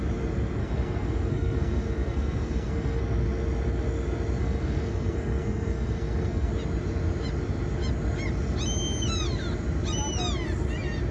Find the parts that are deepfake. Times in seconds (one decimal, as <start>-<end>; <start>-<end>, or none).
0.6-3.0; 4.4-6.5